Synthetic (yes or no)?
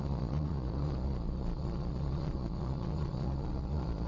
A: yes